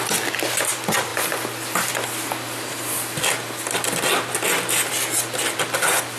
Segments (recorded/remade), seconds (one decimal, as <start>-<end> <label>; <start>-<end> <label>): 0.0-6.2 recorded